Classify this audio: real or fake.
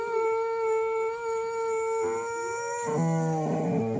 real